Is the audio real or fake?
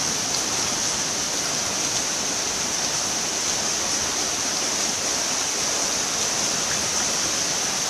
real